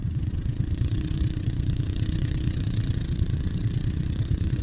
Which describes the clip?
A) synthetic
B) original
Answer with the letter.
A